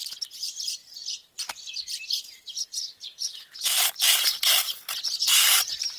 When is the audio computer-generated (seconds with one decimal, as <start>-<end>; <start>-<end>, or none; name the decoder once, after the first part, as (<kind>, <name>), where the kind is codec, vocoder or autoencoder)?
none